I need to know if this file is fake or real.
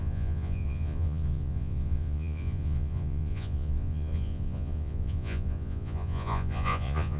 fake